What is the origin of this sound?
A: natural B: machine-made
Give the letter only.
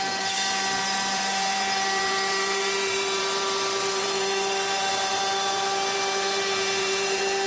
B